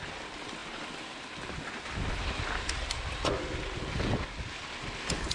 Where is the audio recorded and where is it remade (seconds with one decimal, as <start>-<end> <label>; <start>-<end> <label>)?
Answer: 0.0-5.3 recorded